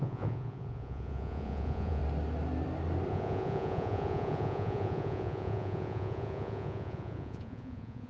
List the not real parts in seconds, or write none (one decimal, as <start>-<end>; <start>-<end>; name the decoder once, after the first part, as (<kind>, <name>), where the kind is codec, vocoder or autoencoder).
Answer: 0.0-2.0 (vocoder, Vocos); 3.1-8.1